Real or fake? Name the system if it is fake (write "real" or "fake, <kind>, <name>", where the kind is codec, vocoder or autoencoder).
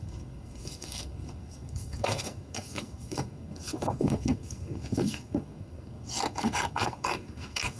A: fake, codec, SNAC